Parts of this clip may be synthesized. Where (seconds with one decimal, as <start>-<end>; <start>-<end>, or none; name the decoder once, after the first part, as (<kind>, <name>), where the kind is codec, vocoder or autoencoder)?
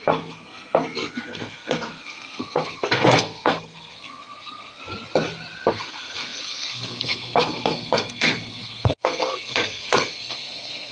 0.0-4.8 (codec, SNAC); 5.7-10.9